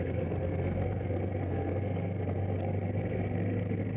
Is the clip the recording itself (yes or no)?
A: no